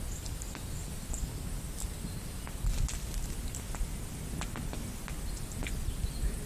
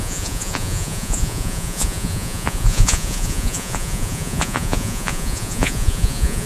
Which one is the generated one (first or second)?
second